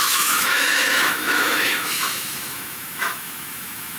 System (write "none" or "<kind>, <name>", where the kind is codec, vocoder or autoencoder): autoencoder, DAC-VAE